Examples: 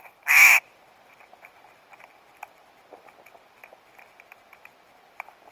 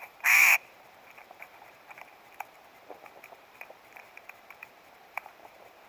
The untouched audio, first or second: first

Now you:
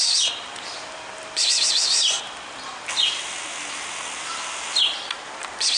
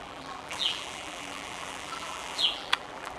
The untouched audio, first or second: first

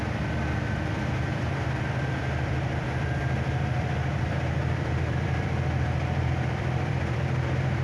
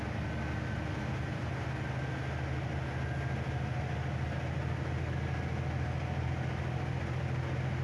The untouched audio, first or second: second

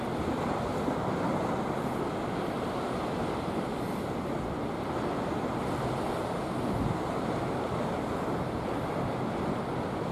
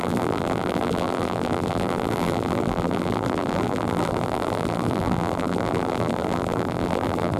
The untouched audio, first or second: first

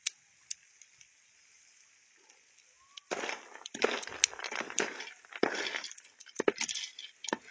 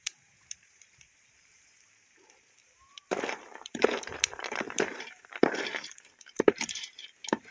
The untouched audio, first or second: first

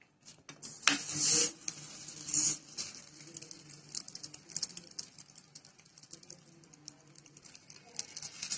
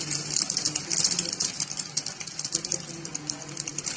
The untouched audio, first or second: first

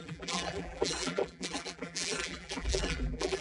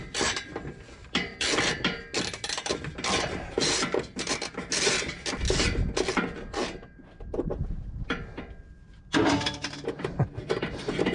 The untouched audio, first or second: second